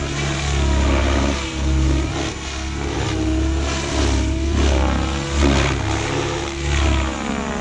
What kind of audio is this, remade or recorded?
recorded